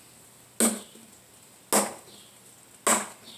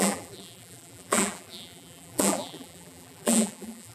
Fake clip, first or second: second